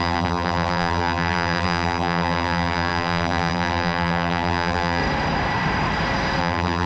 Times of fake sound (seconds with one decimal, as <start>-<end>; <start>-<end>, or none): 0.0-5.0; 6.4-6.9